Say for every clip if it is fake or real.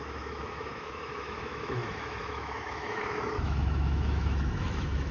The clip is fake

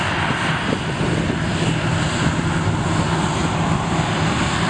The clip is real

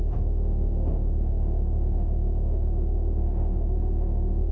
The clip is fake